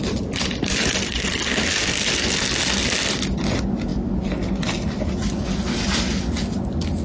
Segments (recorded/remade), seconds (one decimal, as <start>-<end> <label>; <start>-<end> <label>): 0.0-1.0 recorded; 1.0-1.7 remade; 1.7-7.0 recorded